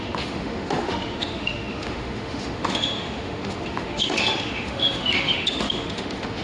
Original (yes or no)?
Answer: no